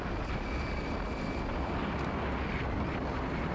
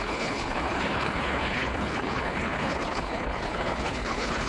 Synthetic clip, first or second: second